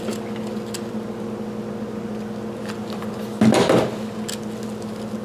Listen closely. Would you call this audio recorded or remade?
recorded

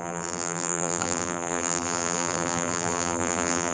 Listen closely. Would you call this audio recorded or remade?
remade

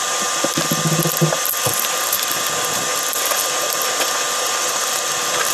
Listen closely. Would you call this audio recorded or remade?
recorded